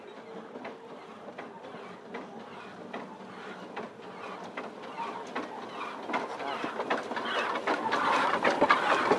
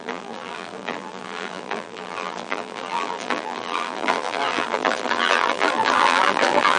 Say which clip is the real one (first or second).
first